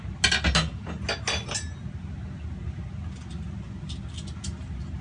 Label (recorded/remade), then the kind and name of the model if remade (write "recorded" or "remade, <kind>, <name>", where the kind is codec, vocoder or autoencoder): recorded